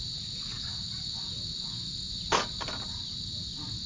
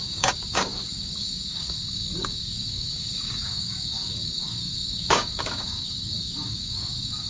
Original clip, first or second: first